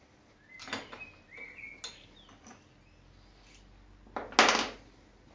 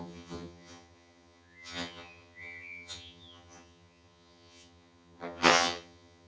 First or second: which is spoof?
second